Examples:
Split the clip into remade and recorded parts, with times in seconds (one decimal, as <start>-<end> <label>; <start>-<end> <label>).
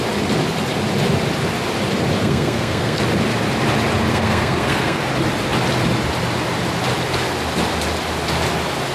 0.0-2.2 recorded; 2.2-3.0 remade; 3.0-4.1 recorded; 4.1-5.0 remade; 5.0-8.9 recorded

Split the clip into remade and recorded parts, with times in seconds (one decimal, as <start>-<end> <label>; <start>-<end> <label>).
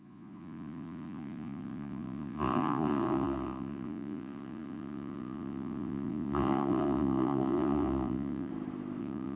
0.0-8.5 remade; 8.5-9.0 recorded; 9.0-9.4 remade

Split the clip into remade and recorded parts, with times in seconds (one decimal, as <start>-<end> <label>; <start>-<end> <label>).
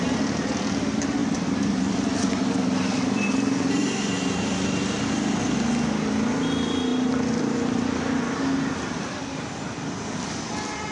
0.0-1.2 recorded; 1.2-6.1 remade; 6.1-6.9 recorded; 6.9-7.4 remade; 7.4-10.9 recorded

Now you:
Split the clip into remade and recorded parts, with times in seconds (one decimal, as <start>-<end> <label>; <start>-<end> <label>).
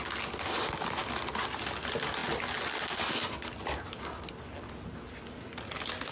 0.0-6.1 recorded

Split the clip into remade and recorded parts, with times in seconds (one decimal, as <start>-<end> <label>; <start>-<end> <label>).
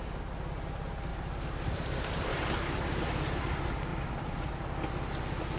0.0-1.1 recorded; 1.1-3.5 remade; 3.5-3.9 recorded; 3.9-4.5 remade; 4.5-5.6 recorded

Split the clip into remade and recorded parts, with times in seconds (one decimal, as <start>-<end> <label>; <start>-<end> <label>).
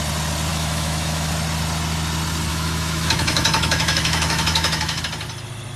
0.0-0.5 recorded; 0.5-1.3 remade; 1.3-2.5 recorded; 2.5-5.0 remade; 5.0-5.8 recorded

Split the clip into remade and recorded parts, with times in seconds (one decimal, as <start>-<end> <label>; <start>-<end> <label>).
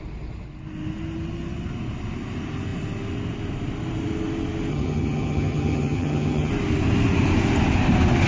0.0-4.7 recorded; 4.7-6.5 remade; 6.5-8.3 recorded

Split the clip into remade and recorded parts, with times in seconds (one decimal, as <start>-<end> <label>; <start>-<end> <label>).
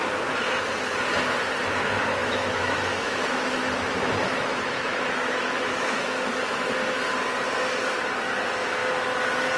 0.0-2.2 recorded; 2.2-6.7 remade; 6.7-9.6 recorded